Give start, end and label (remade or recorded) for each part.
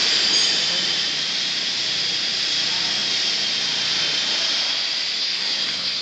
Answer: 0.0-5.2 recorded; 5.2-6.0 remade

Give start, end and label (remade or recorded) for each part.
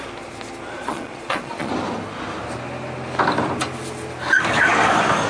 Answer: 0.0-0.8 recorded; 0.8-1.7 remade; 1.7-5.3 recorded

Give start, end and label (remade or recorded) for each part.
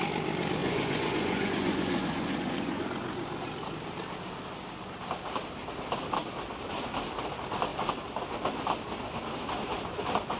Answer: 0.0-0.6 recorded; 0.6-2.9 remade; 2.9-10.4 recorded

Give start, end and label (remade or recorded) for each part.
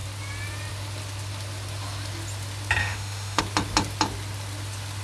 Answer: 0.0-2.8 recorded; 2.8-3.4 remade; 3.4-5.0 recorded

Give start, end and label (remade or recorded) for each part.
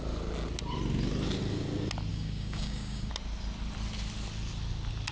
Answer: 0.0-2.1 recorded; 2.1-3.1 remade; 3.1-5.1 recorded